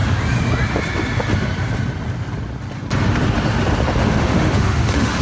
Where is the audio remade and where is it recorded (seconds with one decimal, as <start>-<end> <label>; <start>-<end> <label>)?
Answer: 0.0-4.0 recorded; 4.0-5.2 remade